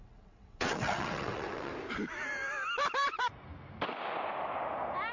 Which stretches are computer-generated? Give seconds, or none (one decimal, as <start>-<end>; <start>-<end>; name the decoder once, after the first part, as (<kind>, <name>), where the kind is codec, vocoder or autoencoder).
0.0-1.7 (vocoder, WaveNeXt)